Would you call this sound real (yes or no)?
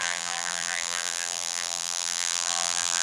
no